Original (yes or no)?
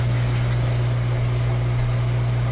yes